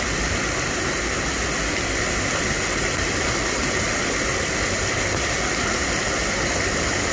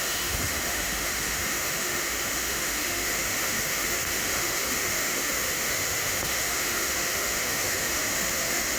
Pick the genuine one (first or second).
first